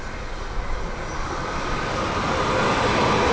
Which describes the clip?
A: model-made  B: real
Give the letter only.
B